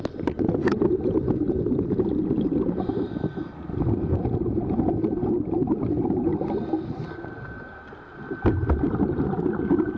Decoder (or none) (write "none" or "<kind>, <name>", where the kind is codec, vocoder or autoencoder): none